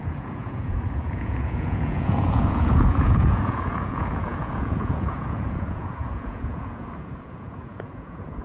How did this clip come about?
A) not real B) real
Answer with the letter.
A